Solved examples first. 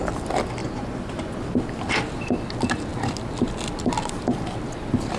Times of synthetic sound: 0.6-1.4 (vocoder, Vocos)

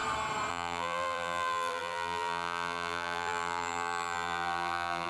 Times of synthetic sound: 0.5-5.1 (vocoder, BigVGAN v2)

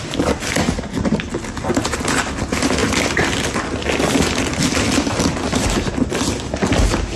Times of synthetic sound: none

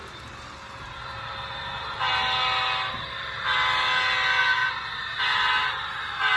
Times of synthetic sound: none

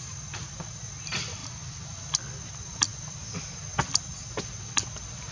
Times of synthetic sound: none